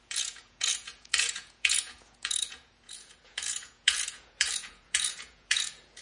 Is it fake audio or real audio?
fake